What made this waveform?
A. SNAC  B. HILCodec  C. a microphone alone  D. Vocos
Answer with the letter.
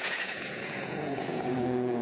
D